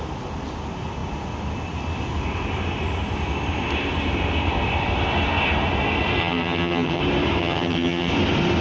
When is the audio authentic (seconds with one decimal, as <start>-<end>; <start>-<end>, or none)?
0.0-6.2; 7.0-7.4; 8.1-8.6